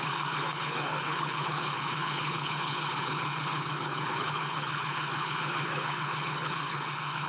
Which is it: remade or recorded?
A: remade